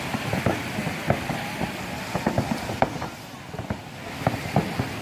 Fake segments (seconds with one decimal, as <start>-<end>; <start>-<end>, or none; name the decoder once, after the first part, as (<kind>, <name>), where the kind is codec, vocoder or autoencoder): none